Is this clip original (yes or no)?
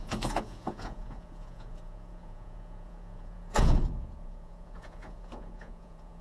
no